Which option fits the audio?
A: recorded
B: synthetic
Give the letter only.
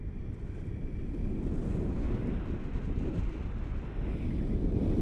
A